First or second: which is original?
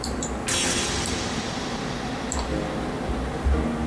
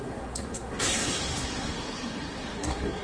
first